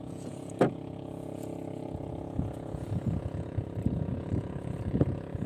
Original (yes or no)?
no